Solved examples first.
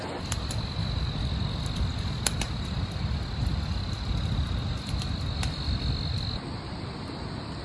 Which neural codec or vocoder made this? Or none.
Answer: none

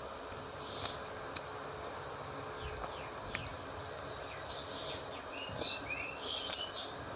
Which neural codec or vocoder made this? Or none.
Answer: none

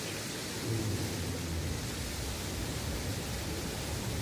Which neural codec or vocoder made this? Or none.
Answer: none